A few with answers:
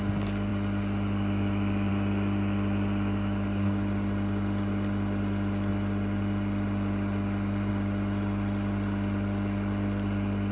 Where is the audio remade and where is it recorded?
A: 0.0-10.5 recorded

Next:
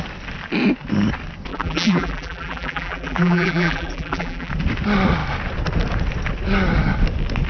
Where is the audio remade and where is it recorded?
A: 0.0-1.5 recorded; 1.5-4.5 remade; 4.5-7.5 recorded

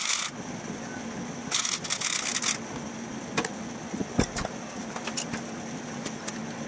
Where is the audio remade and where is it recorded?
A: 0.0-6.7 recorded

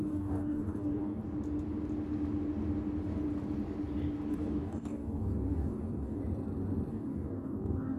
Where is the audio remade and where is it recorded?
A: 0.0-1.2 remade; 1.2-4.3 recorded; 4.3-6.2 remade; 6.2-6.9 recorded; 6.9-8.0 remade

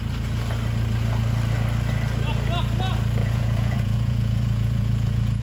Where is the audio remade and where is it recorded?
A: 0.0-3.2 recorded; 3.2-5.4 remade